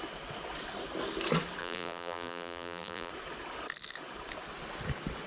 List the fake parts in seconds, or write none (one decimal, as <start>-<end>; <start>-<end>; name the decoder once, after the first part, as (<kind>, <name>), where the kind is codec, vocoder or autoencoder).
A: 1.6-3.1 (vocoder, BigVGAN v2)